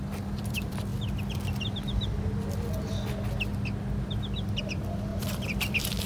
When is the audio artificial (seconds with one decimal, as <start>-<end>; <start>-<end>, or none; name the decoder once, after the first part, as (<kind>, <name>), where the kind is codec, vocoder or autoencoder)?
0.0-0.9 (vocoder, BigVGAN v2); 4.6-6.1